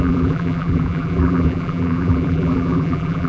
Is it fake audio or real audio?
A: fake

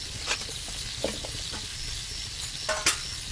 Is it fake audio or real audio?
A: real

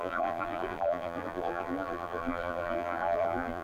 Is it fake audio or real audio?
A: fake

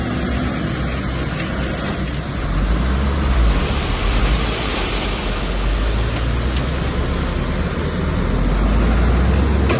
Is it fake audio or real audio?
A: real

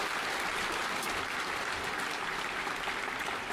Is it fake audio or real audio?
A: real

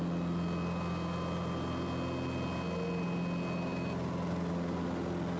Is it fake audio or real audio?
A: real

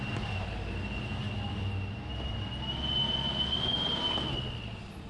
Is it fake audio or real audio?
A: real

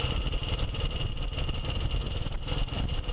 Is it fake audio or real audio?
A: fake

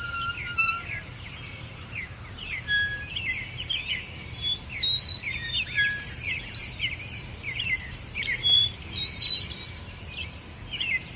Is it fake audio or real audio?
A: fake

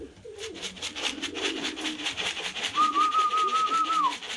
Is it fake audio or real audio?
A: fake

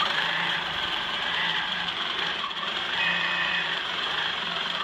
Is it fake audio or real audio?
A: fake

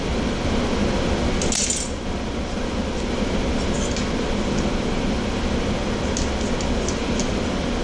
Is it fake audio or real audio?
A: real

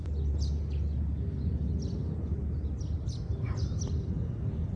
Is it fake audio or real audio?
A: real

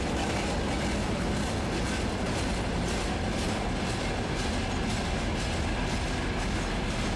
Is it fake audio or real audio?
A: real